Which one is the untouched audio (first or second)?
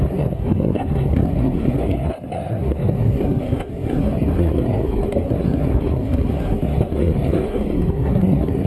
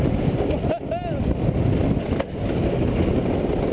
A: second